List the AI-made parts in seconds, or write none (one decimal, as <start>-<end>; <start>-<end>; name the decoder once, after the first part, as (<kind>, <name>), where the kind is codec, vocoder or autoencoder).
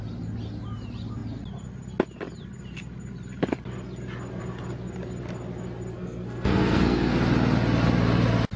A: 5.9-7.1 (codec, SNAC)